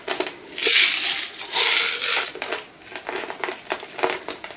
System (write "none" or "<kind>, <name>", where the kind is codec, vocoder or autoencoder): none